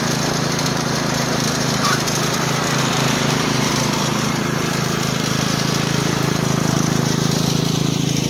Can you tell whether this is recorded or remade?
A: remade